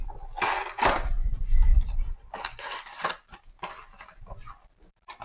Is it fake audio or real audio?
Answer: fake